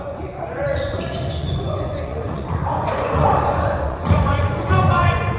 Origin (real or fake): fake